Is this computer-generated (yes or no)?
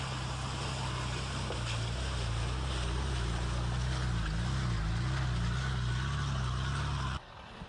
no